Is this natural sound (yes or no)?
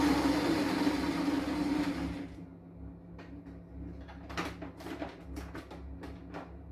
yes